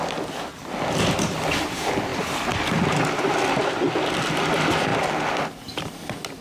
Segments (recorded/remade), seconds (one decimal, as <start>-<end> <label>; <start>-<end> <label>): 0.0-6.4 recorded